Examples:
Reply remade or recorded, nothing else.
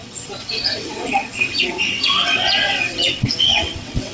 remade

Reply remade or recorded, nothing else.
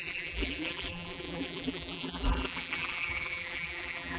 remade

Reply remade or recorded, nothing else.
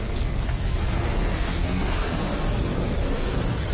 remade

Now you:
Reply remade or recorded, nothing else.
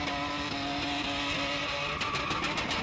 recorded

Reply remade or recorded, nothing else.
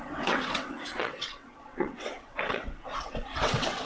remade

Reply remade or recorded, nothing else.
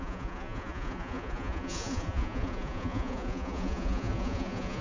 remade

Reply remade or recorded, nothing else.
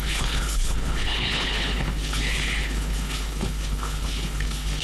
remade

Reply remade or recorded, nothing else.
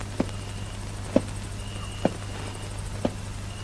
recorded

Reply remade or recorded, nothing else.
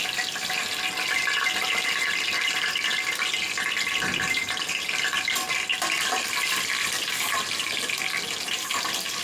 recorded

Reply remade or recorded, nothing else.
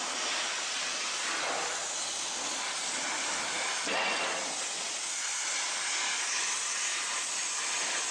recorded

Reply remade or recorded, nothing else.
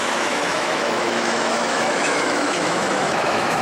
remade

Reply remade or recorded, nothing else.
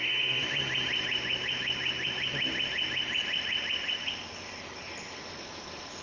recorded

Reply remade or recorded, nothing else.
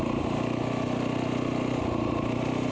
recorded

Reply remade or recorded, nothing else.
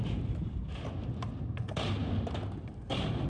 recorded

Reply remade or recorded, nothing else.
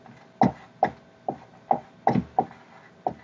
recorded